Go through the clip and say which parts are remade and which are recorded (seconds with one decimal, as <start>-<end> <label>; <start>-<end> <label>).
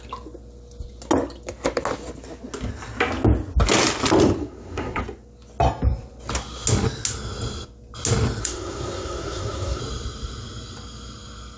0.0-4.4 recorded; 4.4-5.0 remade; 5.0-8.4 recorded; 8.4-9.8 remade; 9.8-11.6 recorded